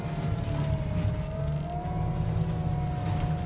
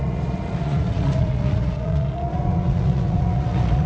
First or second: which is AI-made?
second